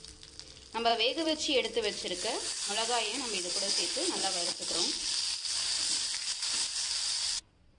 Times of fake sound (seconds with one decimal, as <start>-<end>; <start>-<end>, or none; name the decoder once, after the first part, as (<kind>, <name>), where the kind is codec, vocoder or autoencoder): 0.9-2.7 (vocoder, BigVGAN v2); 5.0-5.8